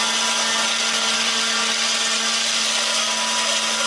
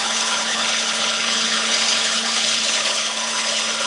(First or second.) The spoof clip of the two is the second